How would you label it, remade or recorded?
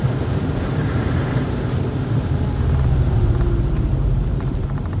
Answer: remade